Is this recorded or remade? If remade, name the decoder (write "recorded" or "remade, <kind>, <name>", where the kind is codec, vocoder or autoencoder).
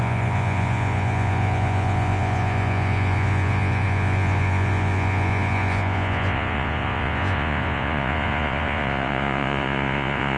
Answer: remade, vocoder, Vocos